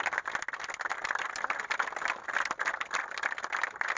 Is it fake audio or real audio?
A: real